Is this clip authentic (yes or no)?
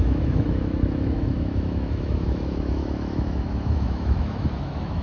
no